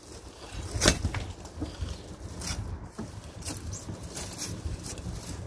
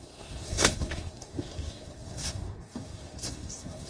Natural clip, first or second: first